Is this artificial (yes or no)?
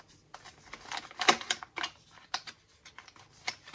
no